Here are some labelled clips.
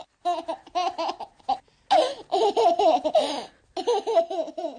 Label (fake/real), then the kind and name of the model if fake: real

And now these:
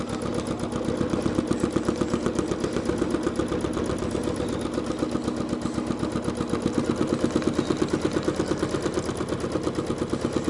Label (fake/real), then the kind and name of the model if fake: real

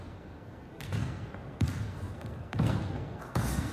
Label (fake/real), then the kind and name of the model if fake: fake, codec, SNAC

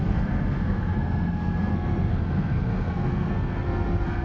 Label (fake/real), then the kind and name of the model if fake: fake, codec, SNAC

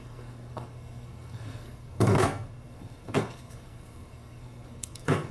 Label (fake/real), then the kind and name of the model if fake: fake, codec, SNAC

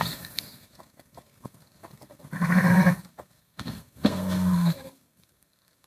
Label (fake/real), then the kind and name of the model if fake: fake, codec, SNAC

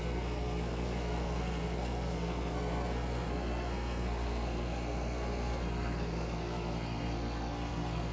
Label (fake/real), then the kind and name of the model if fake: fake, codec, SNAC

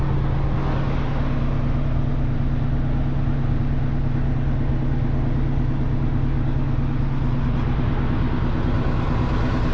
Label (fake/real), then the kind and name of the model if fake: real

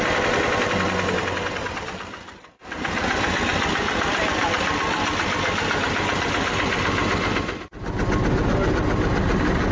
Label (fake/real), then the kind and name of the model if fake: real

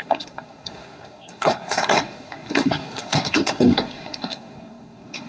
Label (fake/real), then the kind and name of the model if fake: fake, codec, SNAC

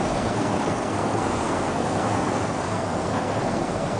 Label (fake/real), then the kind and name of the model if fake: fake, codec, SNAC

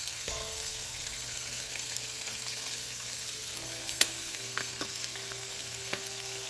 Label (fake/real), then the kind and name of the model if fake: fake, codec, SNAC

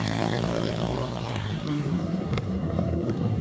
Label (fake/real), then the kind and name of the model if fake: fake, codec, SNAC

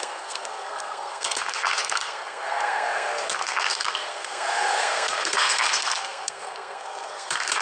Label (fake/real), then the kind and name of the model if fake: fake, codec, SNAC